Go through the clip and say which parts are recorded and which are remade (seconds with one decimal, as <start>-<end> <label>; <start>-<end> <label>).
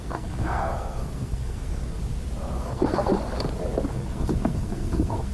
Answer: 0.0-2.0 remade; 2.0-2.6 recorded; 2.6-3.1 remade; 3.1-3.9 recorded; 3.9-5.3 remade